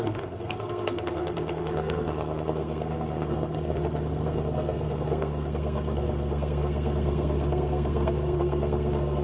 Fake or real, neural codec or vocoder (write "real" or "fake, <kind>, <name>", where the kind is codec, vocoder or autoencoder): fake, codec, SNAC